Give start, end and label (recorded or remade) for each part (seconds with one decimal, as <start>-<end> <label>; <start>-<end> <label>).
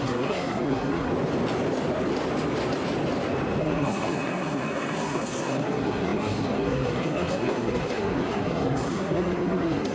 0.0-1.1 remade; 1.1-3.6 recorded; 3.6-9.9 remade